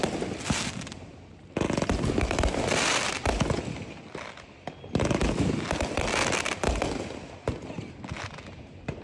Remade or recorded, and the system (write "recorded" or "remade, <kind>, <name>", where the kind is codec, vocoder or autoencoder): recorded